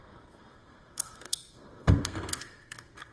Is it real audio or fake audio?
fake